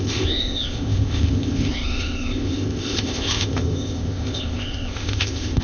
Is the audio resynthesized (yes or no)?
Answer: yes